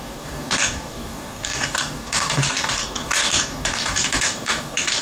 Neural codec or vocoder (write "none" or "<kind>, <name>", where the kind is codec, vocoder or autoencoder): codec, DAC